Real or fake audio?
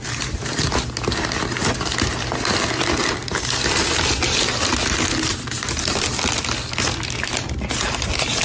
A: real